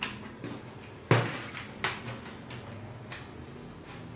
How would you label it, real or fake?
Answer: real